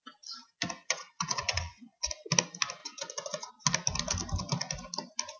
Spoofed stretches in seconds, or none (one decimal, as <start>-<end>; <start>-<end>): 0.8-2.1; 2.8-3.5